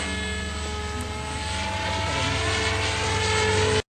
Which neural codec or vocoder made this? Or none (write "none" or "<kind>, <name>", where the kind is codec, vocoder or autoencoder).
none